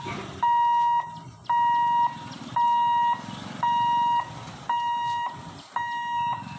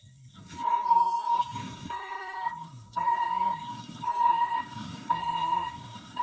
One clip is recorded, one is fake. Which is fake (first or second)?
second